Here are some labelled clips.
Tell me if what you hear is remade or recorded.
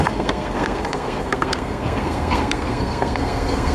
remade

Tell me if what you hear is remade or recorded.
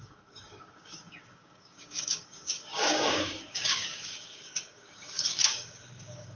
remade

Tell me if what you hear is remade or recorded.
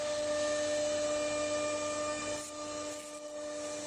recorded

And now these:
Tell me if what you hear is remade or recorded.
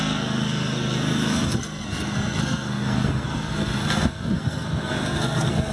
remade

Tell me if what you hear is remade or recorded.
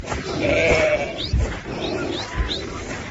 recorded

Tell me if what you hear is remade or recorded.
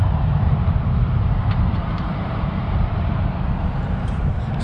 remade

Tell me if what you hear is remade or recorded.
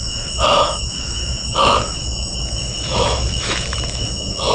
remade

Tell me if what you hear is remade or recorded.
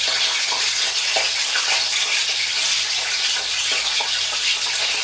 recorded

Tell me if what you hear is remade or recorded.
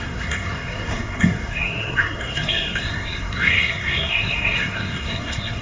remade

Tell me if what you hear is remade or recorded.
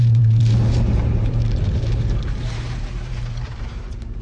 remade